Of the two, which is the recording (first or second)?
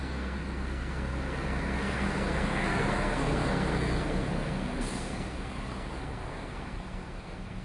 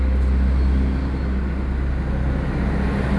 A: second